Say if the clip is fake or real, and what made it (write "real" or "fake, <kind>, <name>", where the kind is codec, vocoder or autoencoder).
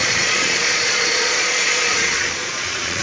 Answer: fake, vocoder, Vocos